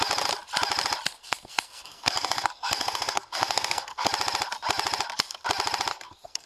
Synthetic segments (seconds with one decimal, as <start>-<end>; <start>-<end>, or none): 1.2-4.1; 5.9-6.5